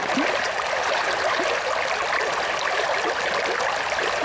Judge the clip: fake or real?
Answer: fake